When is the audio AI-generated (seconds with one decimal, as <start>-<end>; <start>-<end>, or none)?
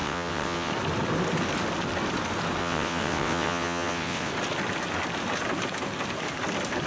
0.0-0.7; 2.6-4.3